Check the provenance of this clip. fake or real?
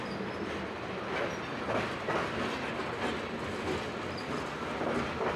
real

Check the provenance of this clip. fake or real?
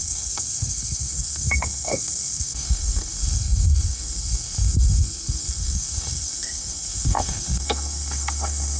fake